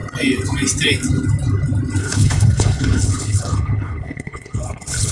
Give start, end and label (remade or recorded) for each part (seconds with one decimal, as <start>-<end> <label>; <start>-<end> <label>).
0.0-2.0 recorded; 2.0-5.1 remade

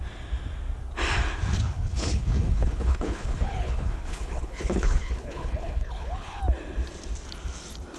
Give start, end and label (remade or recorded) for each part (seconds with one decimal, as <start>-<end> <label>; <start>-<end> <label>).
0.0-1.6 recorded; 1.6-6.4 remade; 6.4-8.0 recorded

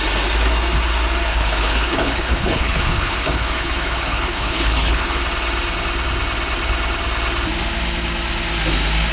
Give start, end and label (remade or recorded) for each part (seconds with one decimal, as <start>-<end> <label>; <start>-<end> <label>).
0.0-1.3 recorded; 1.3-5.2 remade; 5.2-9.1 recorded

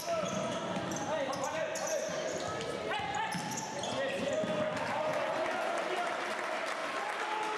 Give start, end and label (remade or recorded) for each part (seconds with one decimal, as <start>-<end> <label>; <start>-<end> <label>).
0.0-7.6 recorded

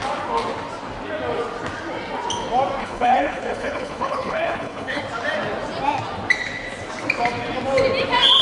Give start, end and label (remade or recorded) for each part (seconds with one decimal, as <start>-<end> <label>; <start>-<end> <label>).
0.0-2.8 recorded; 2.8-5.0 remade; 5.0-8.4 recorded

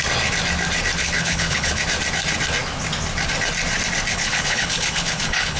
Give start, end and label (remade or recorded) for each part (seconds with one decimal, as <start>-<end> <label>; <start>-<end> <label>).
0.0-1.0 recorded; 1.0-1.8 remade; 1.8-4.1 recorded; 4.1-5.6 remade

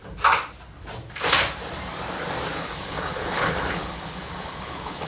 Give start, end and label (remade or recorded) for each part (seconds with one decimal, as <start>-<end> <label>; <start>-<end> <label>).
0.0-2.6 recorded; 2.6-5.1 remade